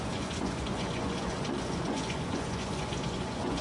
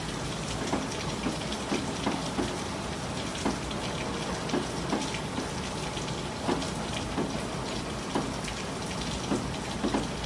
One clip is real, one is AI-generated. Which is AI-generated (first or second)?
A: first